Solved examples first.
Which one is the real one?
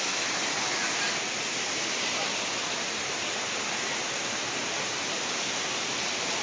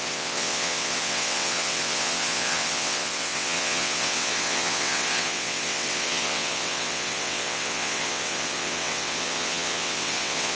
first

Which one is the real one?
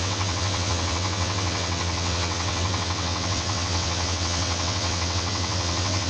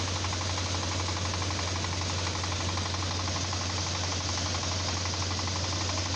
second